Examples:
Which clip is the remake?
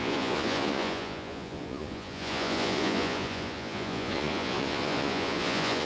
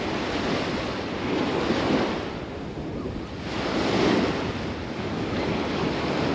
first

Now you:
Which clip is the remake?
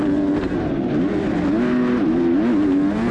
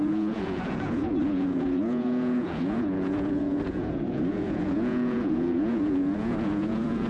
second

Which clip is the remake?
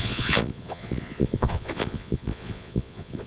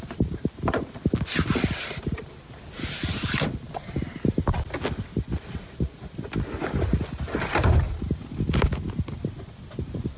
first